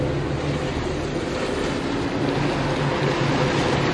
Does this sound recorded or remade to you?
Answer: recorded